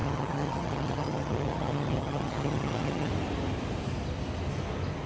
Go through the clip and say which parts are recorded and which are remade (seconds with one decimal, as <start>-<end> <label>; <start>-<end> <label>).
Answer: 0.0-3.1 remade; 3.1-5.1 recorded